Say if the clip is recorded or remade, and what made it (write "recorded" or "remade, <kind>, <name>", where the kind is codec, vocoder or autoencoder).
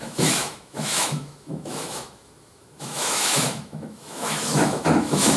remade, autoencoder, DAC-VAE